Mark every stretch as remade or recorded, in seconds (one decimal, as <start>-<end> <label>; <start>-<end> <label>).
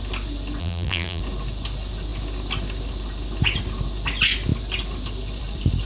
0.0-0.6 recorded; 0.6-1.2 remade; 1.2-5.9 recorded